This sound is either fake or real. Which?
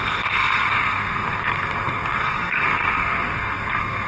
fake